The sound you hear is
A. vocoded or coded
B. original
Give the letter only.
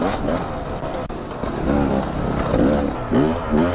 B